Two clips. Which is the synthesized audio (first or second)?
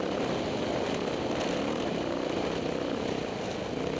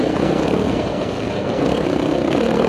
second